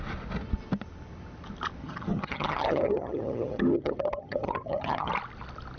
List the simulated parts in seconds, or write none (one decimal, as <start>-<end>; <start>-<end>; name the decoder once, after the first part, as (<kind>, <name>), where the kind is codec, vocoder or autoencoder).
1.8-5.1 (vocoder, HiFi-GAN)